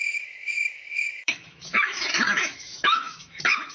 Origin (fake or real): fake